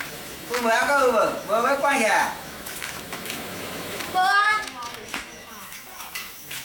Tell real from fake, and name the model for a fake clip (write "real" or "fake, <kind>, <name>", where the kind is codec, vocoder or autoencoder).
fake, autoencoder, DAC-VAE